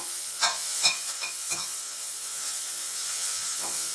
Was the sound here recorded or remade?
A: remade